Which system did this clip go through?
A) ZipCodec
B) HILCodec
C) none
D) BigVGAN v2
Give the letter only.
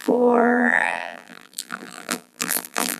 D